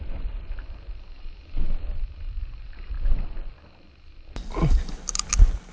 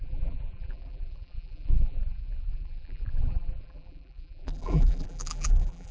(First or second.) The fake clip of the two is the second